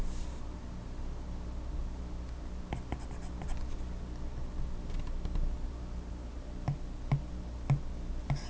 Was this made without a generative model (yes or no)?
yes